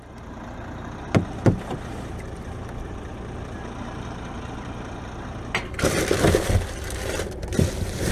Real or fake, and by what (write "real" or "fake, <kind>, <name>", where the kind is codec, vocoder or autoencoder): fake, vocoder, BigVGAN v2